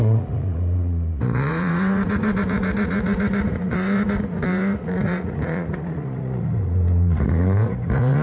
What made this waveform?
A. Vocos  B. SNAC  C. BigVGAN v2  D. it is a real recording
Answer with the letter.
A